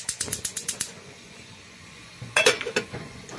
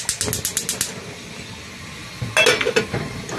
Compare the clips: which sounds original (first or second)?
second